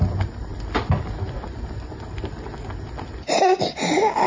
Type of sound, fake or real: real